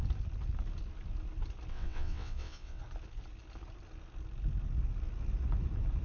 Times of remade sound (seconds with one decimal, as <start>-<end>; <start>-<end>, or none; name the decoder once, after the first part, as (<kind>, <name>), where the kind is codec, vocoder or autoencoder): 1.7-2.8 (vocoder, WaveNeXt)

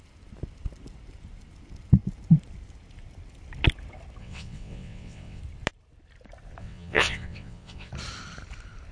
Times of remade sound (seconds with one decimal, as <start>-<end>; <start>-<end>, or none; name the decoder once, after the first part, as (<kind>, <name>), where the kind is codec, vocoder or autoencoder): 4.2-5.4 (vocoder, WaveNeXt); 6.6-7.9

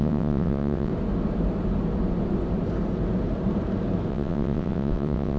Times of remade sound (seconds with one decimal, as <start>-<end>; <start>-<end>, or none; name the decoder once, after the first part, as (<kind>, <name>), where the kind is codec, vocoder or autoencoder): 0.0-0.9 (vocoder, WaveNeXt); 4.1-5.4

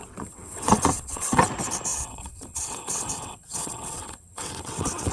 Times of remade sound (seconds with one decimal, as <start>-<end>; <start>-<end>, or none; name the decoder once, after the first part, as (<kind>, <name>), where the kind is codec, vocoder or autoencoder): 0.0-1.4 (vocoder, WaveNeXt); 1.9-5.1

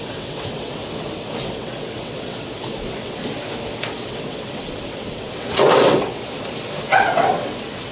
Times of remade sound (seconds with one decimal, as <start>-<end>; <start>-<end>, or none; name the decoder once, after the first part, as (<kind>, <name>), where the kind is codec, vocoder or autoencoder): 0.0-0.8 (vocoder, WaveNeXt); 1.4-3.2; 3.9-6.2; 6.8-7.9

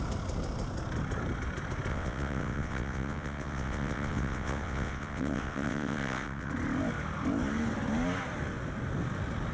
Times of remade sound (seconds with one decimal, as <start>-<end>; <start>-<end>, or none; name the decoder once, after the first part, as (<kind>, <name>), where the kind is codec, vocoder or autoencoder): 1.9-6.5 (vocoder, WaveNeXt)